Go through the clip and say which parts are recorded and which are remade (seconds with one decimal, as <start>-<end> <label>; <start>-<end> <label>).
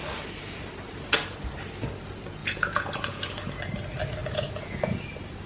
0.0-2.4 recorded; 2.4-3.3 remade; 3.3-4.2 recorded; 4.2-5.0 remade; 5.0-5.5 recorded